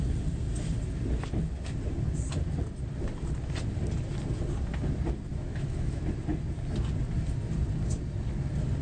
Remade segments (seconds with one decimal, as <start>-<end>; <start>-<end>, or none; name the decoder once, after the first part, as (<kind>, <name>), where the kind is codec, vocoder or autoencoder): 5.3-6.0 (autoencoder, DAC-VAE)